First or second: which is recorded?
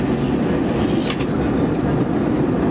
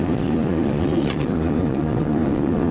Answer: first